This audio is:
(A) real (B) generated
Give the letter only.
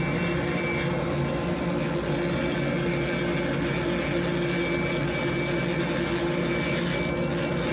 A